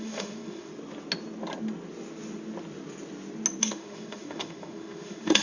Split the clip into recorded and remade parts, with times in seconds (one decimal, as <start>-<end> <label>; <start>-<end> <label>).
0.0-0.7 remade; 0.7-3.6 recorded; 3.6-5.4 remade